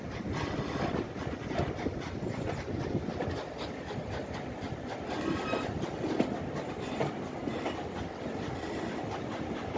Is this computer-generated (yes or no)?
no